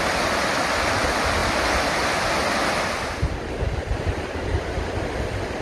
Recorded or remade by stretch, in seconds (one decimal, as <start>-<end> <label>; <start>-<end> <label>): 0.0-5.6 recorded